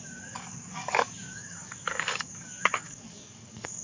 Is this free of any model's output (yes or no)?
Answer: no